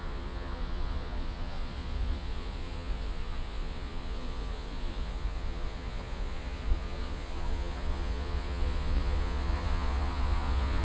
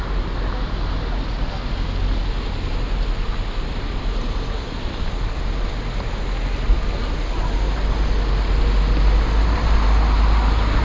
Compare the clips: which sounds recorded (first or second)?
second